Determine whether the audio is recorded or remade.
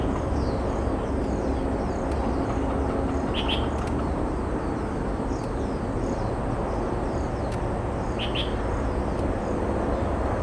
recorded